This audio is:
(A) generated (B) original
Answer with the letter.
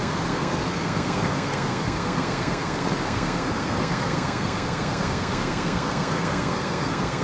A